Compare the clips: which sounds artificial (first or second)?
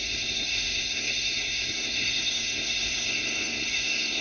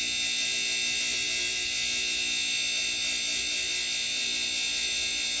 first